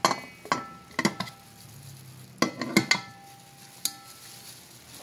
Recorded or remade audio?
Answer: recorded